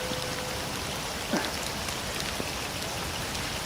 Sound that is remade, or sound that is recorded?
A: recorded